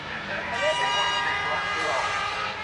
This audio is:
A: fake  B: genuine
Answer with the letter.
A